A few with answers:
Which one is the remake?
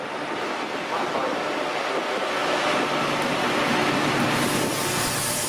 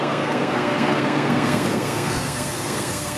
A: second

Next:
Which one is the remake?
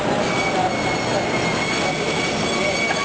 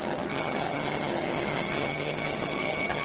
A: second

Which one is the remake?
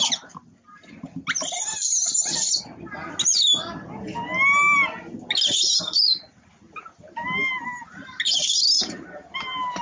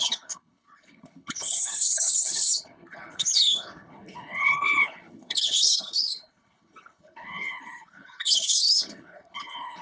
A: second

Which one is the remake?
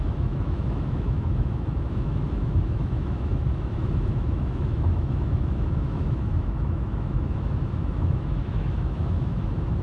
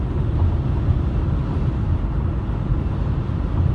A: first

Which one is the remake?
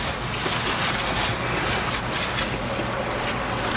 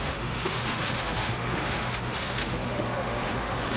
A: second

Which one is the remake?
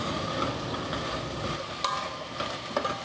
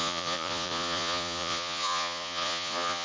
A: second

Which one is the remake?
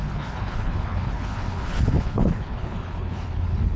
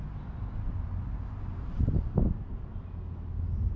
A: first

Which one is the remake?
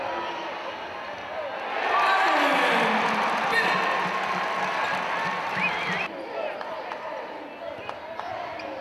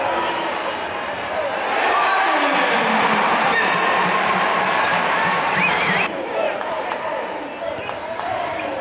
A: second